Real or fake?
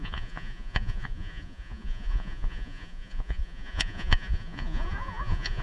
fake